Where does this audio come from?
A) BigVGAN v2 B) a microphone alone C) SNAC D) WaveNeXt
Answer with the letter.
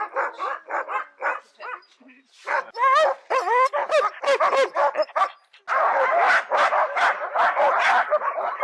B